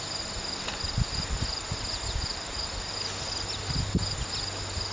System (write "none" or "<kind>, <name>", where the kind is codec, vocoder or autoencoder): none